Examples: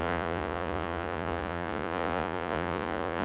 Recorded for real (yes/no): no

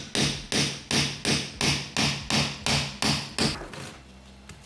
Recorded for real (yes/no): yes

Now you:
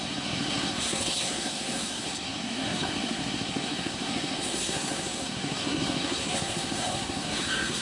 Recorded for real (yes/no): no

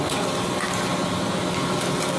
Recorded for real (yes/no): yes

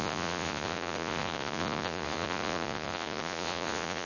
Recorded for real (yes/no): no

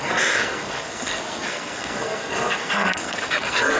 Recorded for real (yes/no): no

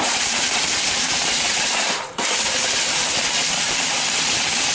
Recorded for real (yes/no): no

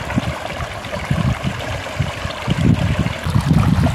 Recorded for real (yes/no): yes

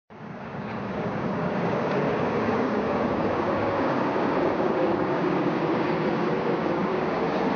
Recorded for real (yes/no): no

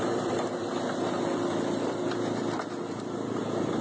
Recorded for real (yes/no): no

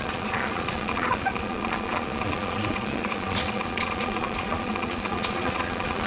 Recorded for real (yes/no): no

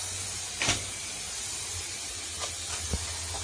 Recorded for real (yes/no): yes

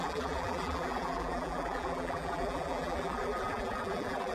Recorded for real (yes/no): no